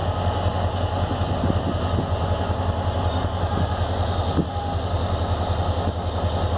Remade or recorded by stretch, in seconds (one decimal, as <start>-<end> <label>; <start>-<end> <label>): 0.0-6.6 recorded